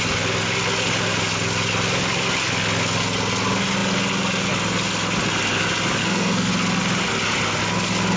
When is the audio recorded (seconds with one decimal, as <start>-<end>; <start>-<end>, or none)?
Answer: 0.0-6.0; 6.5-8.2